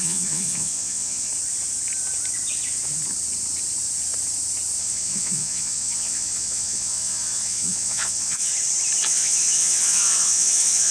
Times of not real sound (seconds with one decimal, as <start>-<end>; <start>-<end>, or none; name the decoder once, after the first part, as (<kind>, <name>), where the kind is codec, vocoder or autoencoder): 0.0-1.3 (vocoder, Vocos); 4.8-8.5; 9.0-10.9